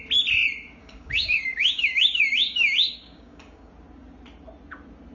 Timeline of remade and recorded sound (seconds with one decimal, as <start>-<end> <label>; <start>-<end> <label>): 0.0-0.8 recorded; 0.8-3.7 remade; 3.7-5.1 recorded